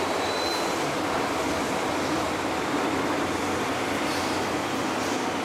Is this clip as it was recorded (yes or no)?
yes